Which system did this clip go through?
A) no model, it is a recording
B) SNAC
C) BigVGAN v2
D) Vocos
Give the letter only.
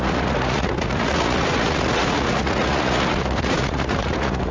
D